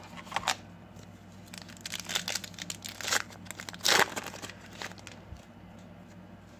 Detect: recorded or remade recorded